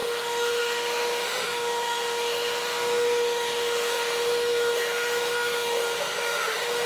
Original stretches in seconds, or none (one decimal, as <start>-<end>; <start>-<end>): none